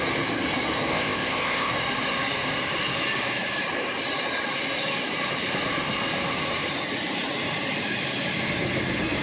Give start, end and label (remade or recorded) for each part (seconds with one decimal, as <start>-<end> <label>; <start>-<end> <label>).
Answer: 0.0-0.9 recorded; 0.9-1.7 remade; 1.7-9.2 recorded